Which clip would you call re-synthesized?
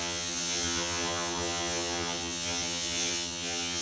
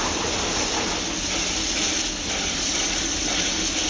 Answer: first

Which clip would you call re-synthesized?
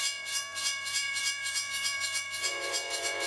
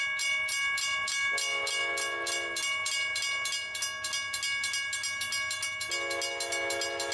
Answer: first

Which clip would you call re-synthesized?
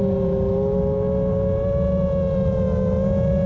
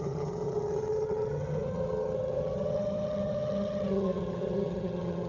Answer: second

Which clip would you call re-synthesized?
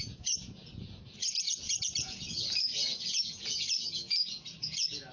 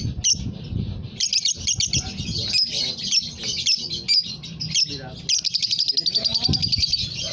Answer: first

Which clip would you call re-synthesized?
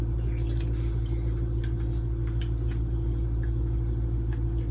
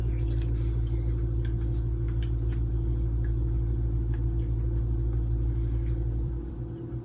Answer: second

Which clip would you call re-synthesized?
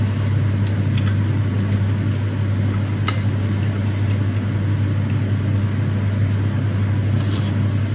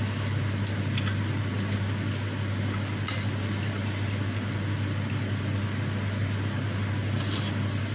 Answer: second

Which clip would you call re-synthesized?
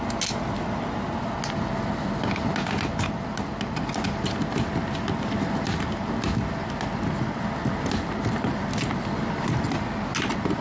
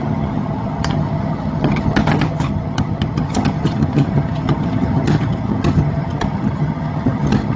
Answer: second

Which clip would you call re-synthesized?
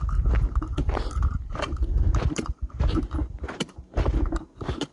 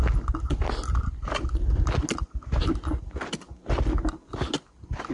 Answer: first